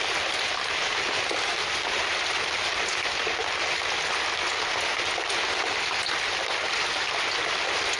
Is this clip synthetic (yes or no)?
no